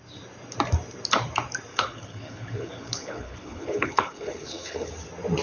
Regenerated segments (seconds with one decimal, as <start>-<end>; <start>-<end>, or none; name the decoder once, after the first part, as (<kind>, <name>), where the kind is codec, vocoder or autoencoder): 1.7-4.9 (codec, HILCodec)